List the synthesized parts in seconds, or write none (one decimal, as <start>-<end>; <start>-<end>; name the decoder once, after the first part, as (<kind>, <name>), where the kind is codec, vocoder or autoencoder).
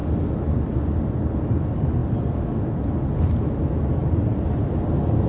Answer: none